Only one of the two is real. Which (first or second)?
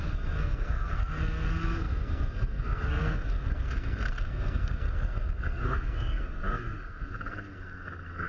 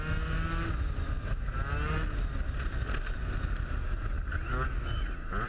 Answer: second